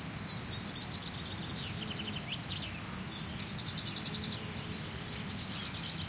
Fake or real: real